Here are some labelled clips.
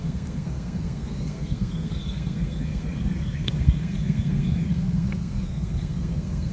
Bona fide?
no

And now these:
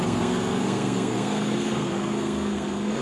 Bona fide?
no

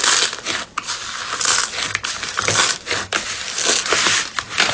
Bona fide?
yes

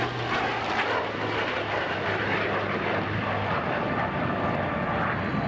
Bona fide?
yes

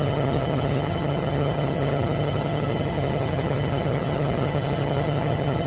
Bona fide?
no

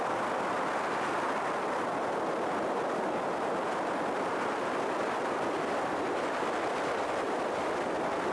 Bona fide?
yes